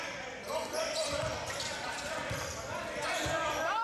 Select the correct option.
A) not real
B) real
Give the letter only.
A